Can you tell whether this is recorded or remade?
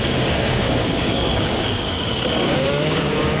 remade